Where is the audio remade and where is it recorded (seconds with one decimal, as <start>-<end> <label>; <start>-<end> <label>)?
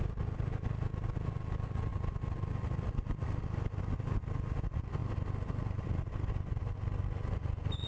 0.0-7.9 recorded